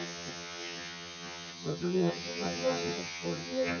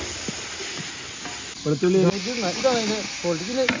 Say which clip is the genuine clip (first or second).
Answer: second